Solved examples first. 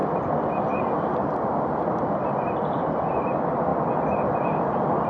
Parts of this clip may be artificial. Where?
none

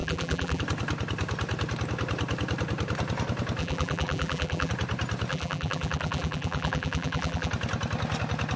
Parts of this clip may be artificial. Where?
0.0-0.6 (vocoder, BigVGAN v2); 3.6-4.7; 5.3-7.5

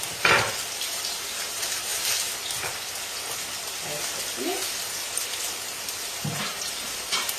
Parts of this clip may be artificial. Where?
0.0-1.9 (vocoder, BigVGAN v2); 6.1-7.4

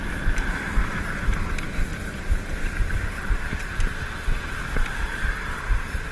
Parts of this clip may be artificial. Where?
1.9-5.6 (vocoder, BigVGAN v2)

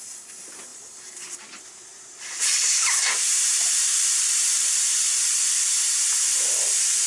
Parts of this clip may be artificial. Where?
0.7-5.0 (vocoder, BigVGAN v2)

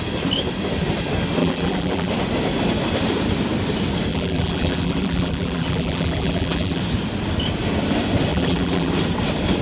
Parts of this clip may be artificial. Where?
1.4-2.1 (vocoder, BigVGAN v2); 4.1-6.8; 8.3-8.9

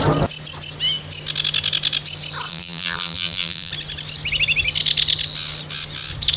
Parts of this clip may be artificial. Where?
2.5-3.7 (vocoder, BigVGAN v2)